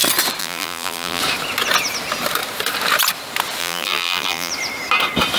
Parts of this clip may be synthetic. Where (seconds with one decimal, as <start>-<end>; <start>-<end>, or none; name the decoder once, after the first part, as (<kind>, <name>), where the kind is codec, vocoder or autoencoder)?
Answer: 0.4-1.2 (vocoder, BigVGAN v2); 3.6-4.5